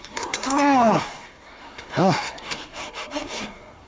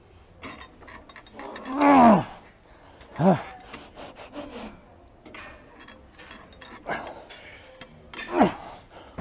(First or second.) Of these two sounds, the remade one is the first